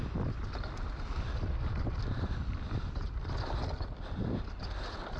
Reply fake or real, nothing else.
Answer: real